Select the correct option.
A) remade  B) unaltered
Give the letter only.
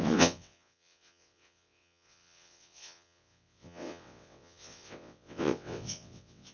A